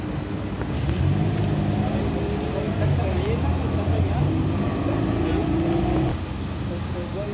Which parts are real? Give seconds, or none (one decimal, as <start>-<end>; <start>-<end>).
0.0-6.1